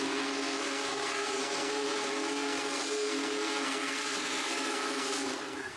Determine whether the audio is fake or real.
fake